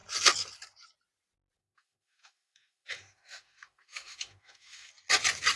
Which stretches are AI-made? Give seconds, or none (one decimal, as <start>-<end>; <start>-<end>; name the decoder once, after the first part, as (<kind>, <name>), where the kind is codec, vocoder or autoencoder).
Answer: 1.6-4.9 (autoencoder, DAC-VAE)